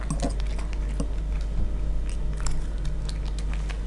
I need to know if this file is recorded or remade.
recorded